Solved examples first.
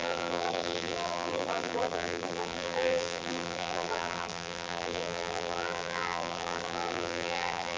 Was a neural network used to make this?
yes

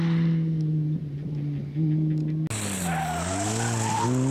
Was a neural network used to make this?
no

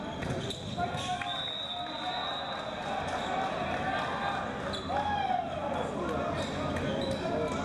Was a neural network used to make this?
no